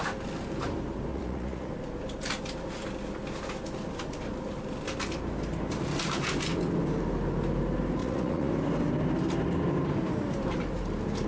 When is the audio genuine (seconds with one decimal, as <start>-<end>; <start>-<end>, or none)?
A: 0.0-1.1; 1.7-8.0; 8.5-11.3